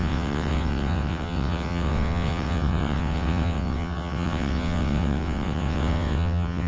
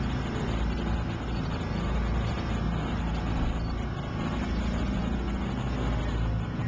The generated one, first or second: first